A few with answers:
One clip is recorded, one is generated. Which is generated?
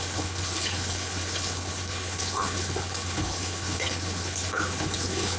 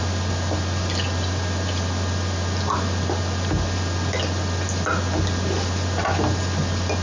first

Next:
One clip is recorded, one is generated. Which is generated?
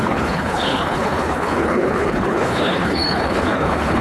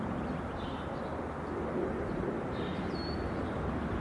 first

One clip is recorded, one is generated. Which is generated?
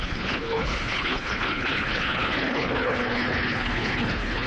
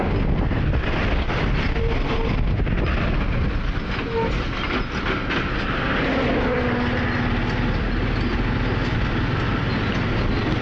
first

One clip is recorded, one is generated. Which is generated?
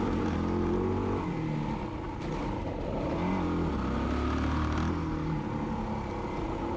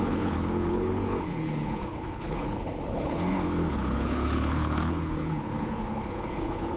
second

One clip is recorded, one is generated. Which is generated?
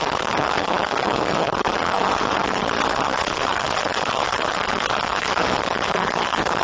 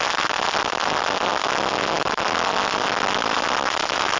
first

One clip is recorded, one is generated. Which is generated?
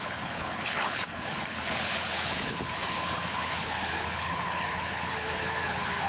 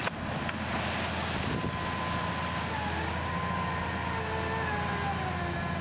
first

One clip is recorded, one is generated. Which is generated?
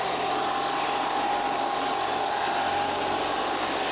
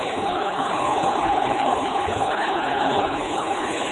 second